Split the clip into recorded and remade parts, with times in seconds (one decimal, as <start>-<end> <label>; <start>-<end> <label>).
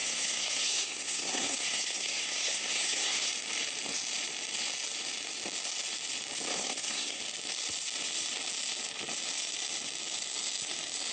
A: 0.0-3.3 remade; 3.3-6.5 recorded; 6.5-7.2 remade; 7.2-11.1 recorded